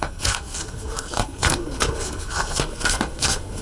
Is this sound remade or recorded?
remade